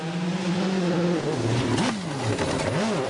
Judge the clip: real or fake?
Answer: real